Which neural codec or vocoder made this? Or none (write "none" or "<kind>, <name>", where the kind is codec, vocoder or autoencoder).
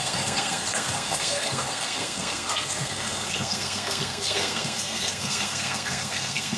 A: codec, SNAC